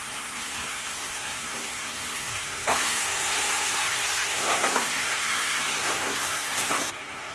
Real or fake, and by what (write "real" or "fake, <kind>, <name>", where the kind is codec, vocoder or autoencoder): fake, codec, SNAC